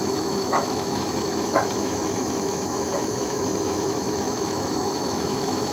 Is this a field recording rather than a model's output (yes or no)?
no